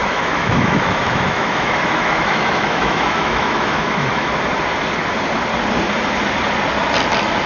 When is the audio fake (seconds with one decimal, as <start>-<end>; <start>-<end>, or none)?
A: 0.0-4.5